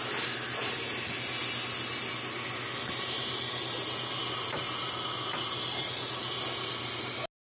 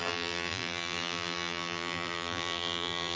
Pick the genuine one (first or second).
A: first